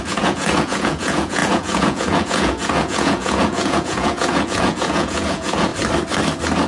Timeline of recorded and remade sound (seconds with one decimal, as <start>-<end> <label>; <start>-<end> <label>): 0.0-5.7 remade; 5.7-6.7 recorded